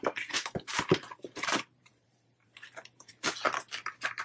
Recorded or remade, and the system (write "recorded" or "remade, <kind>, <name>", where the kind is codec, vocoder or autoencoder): remade, vocoder, BigVGAN v2